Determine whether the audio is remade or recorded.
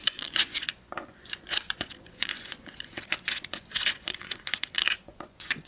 remade